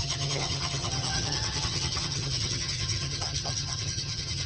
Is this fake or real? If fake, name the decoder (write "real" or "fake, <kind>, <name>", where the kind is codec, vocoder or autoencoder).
fake, vocoder, HiFi-GAN